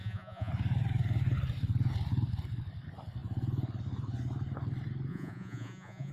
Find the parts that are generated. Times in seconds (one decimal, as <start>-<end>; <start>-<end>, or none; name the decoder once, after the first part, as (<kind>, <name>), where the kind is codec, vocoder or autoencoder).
0.0-0.5 (vocoder, Vocos); 5.1-6.1